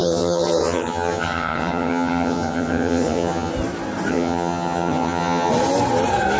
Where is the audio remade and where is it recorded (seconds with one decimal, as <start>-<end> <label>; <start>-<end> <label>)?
0.0-3.5 remade; 3.5-4.1 recorded; 4.1-5.5 remade; 5.5-6.4 recorded